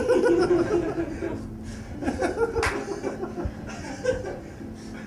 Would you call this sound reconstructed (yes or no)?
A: no